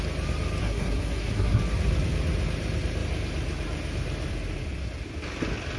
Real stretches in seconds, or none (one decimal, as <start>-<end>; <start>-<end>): 0.0-0.6; 1.6-5.8